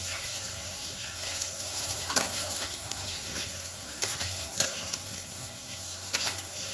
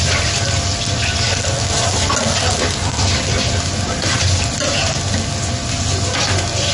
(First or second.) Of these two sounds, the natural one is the second